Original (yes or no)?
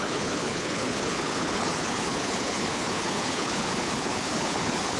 no